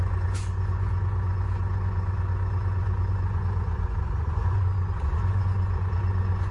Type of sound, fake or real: fake